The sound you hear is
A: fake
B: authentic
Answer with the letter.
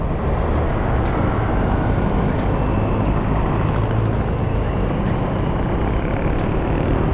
B